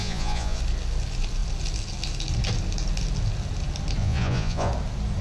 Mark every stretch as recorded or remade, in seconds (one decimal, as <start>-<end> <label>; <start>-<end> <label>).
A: 0.0-0.6 remade; 0.6-4.0 recorded; 4.0-4.7 remade; 4.7-5.2 recorded